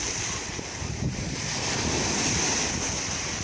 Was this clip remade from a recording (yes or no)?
no